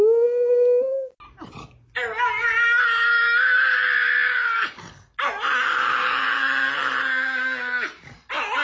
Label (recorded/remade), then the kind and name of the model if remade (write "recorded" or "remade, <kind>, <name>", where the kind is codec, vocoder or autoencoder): recorded